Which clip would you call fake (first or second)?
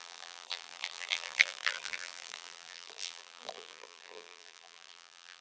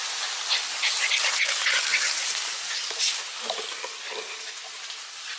first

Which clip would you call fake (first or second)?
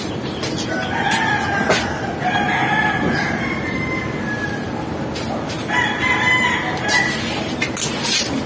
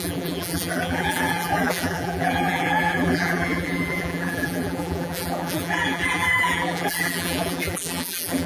second